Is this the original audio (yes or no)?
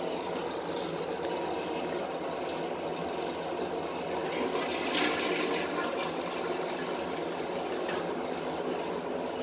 yes